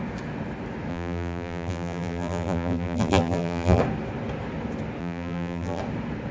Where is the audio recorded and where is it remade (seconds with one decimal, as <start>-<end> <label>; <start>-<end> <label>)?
0.0-0.9 recorded; 0.9-3.8 remade; 3.8-5.0 recorded; 5.0-5.8 remade; 5.8-6.3 recorded